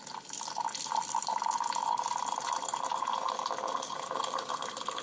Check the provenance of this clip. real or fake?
real